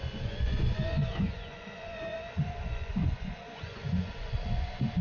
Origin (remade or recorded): remade